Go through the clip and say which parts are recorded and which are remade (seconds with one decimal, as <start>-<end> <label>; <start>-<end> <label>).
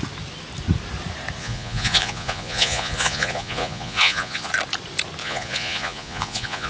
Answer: 0.0-1.4 recorded; 1.4-4.5 remade; 4.5-5.2 recorded; 5.2-6.7 remade